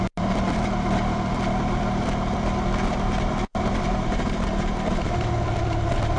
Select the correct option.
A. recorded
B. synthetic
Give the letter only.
B